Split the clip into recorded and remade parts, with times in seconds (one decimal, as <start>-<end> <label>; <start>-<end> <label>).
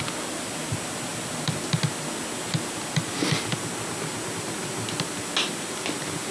0.0-6.3 recorded